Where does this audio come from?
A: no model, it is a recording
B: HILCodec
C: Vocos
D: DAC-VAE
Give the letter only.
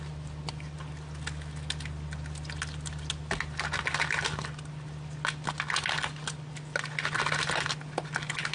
A